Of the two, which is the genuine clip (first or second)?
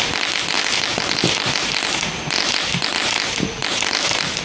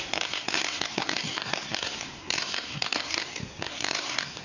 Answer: first